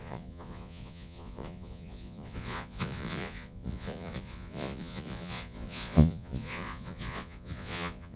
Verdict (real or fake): fake